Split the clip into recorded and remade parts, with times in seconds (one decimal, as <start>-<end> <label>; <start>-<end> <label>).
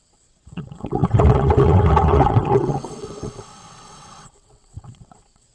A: 0.0-5.5 remade